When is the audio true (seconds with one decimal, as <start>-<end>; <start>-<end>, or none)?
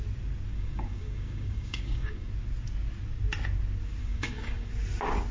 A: 0.0-0.5; 2.3-4.0; 4.7-5.3